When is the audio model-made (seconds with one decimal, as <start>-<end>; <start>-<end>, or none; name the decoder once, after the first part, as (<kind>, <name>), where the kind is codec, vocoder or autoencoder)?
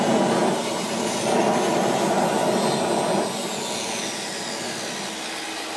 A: none